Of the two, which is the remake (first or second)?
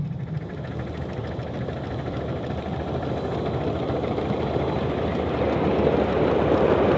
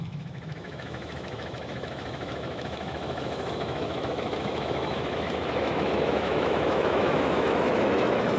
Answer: second